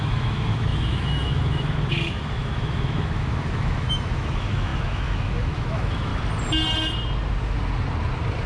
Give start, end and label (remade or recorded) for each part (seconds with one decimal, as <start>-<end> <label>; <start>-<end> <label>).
0.0-6.1 remade; 6.1-8.5 recorded